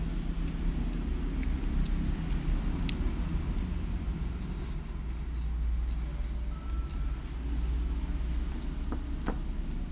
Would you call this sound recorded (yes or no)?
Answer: yes